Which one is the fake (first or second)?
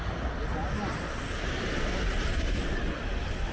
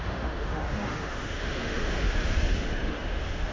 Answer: second